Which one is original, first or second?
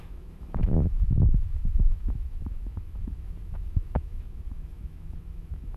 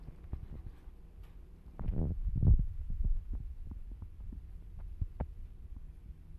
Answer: second